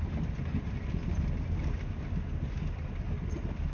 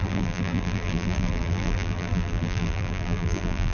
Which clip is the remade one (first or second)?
second